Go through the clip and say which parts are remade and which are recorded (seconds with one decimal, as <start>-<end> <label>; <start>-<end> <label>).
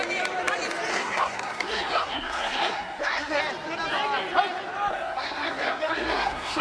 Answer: 0.0-0.9 recorded; 0.9-3.4 remade; 3.4-4.9 recorded; 4.9-6.6 remade